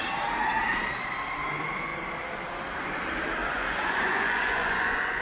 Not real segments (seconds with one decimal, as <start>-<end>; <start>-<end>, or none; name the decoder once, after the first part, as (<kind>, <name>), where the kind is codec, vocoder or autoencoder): 3.4-5.2 (vocoder, Vocos)